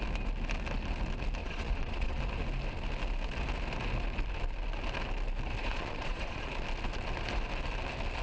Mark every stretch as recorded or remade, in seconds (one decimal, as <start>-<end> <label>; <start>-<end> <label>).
0.0-1.4 recorded; 1.4-2.2 remade; 2.2-5.6 recorded; 5.6-6.5 remade; 6.5-8.2 recorded